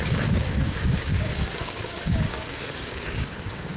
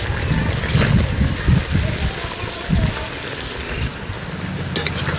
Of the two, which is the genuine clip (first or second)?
second